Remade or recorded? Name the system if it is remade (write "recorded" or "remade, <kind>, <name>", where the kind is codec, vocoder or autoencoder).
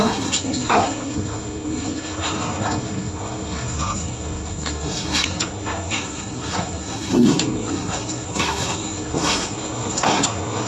remade, codec, SNAC